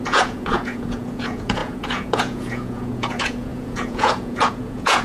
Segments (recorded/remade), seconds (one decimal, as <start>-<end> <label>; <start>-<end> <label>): 0.0-5.0 remade